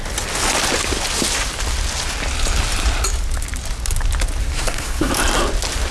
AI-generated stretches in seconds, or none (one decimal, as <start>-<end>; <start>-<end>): 4.4-5.1

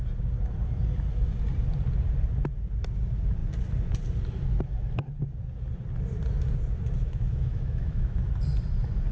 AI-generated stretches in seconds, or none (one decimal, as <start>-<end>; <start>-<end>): 7.0-8.2

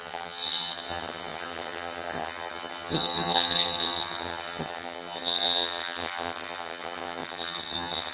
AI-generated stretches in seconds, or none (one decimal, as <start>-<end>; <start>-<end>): 0.0-8.1

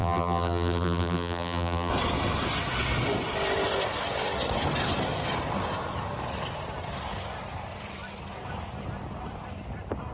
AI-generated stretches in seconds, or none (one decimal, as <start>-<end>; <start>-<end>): 0.0-1.9